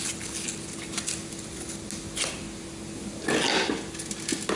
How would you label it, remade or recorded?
recorded